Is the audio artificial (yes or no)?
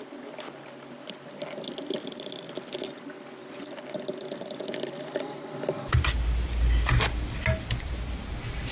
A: no